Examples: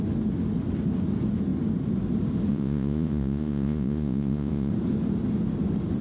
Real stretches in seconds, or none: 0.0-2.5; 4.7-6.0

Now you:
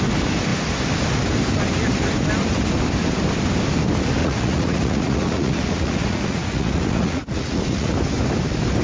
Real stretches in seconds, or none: 0.0-4.2; 7.9-8.8